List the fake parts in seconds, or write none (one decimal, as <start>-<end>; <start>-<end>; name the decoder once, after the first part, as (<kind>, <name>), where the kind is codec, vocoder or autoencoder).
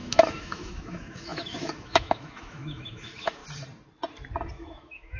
0.0-3.4 (autoencoder, DAC-VAE); 4.5-5.2